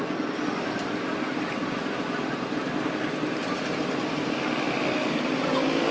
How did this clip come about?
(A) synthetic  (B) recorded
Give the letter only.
B